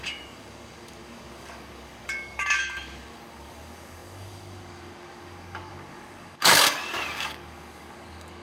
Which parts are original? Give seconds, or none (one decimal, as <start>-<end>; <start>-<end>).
none